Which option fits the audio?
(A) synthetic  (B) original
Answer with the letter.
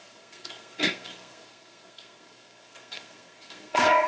A